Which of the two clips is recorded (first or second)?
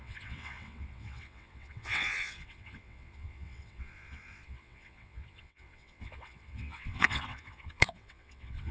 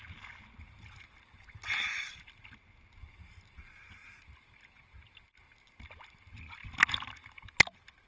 second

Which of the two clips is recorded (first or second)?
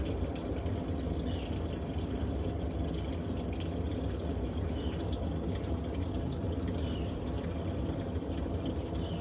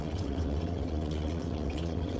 first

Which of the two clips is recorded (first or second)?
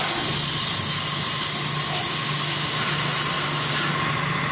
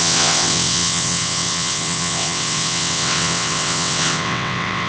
first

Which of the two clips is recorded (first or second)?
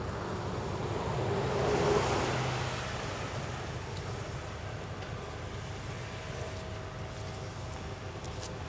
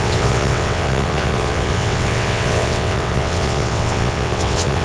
first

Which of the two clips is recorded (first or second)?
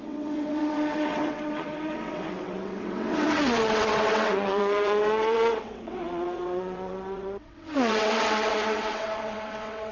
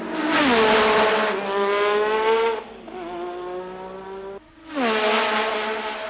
second